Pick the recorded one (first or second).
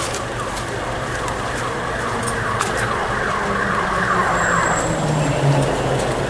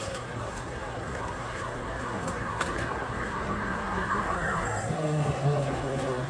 first